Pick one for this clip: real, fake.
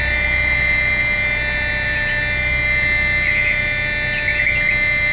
real